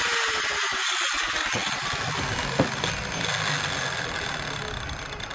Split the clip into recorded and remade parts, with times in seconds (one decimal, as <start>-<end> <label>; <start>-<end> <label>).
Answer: 0.0-5.3 recorded